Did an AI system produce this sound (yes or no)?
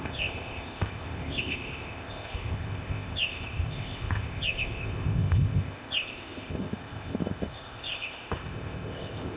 yes